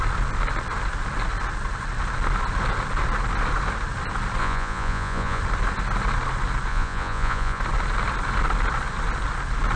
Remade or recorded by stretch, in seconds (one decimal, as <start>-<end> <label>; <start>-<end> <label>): 0.0-4.4 recorded; 4.4-5.4 remade; 5.4-6.7 recorded; 6.7-7.6 remade; 7.6-9.8 recorded